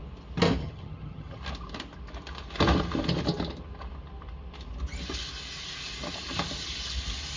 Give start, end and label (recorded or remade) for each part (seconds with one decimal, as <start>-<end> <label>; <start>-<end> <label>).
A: 0.0-0.6 recorded; 0.6-1.4 remade; 1.4-7.4 recorded